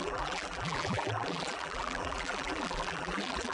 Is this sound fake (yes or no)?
yes